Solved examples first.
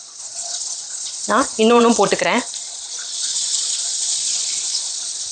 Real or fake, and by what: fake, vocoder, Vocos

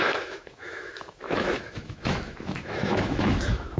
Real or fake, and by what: fake, autoencoder, DAC-VAE